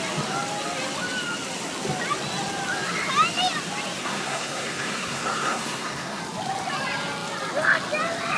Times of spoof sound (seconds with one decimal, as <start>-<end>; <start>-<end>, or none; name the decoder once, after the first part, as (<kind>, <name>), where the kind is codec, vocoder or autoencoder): 4.0-6.2 (codec, SNAC)